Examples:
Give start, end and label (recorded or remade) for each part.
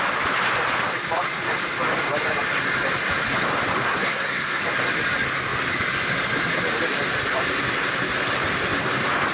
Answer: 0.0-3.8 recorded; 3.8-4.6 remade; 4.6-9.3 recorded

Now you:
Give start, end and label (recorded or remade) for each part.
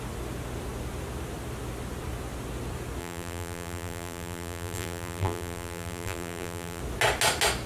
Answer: 0.0-3.0 recorded; 3.0-6.8 remade; 6.8-7.7 recorded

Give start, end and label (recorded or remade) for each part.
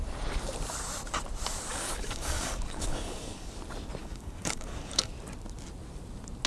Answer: 0.0-1.7 recorded; 1.7-3.6 remade; 3.6-4.0 recorded; 4.0-5.1 remade; 5.1-6.5 recorded